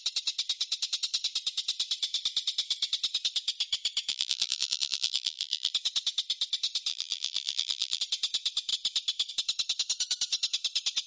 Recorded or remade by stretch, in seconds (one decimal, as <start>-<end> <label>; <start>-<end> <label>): 0.0-4.1 recorded; 4.1-5.7 remade; 5.7-6.9 recorded; 6.9-8.0 remade; 8.0-11.1 recorded